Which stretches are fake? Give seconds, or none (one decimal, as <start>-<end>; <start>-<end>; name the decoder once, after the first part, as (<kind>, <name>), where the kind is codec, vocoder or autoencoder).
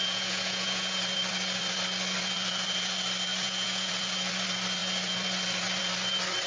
0.0-1.0 (vocoder, Vocos); 3.3-3.9